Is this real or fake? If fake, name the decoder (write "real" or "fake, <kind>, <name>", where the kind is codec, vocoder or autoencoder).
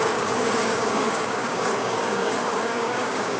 fake, codec, DAC